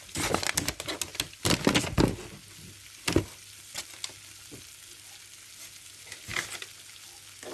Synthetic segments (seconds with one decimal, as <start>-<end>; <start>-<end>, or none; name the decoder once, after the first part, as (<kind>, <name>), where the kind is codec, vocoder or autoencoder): none